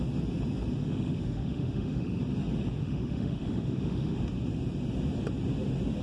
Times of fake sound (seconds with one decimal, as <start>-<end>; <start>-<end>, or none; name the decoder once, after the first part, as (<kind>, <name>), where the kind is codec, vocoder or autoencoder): 0.8-2.2 (autoencoder, DAC-VAE); 2.8-4.2